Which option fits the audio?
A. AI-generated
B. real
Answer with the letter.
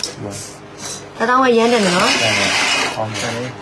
B